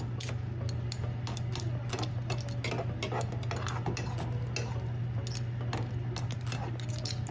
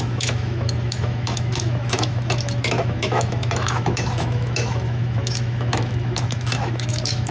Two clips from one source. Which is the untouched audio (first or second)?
first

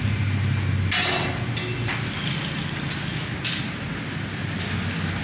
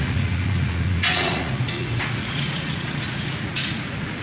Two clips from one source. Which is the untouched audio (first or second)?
first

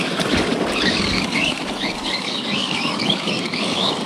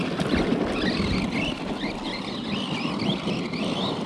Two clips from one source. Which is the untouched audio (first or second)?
second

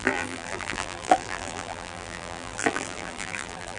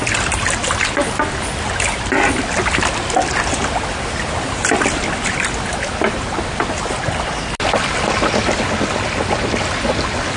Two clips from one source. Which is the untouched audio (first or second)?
second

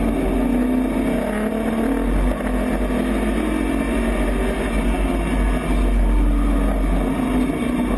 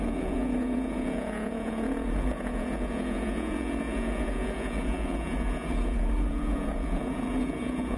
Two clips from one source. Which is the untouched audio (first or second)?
first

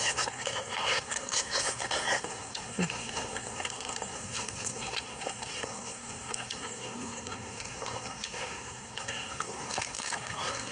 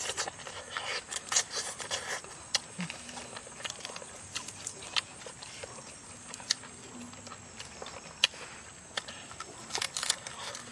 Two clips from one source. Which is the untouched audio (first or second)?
second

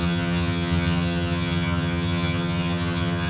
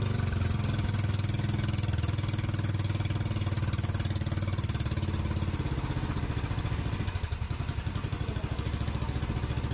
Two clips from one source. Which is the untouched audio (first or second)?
second